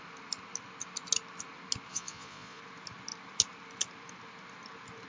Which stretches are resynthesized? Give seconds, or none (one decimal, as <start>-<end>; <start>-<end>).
1.9-2.6